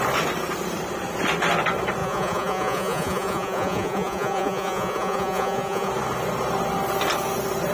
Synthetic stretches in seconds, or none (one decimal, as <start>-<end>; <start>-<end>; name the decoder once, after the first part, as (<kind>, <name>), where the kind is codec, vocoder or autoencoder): 2.0-5.9 (vocoder, Vocos)